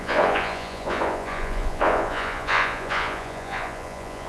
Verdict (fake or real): fake